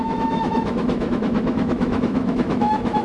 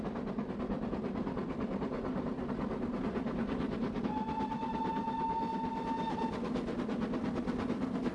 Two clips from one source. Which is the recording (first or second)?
second